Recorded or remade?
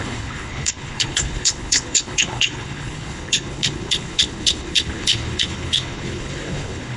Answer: remade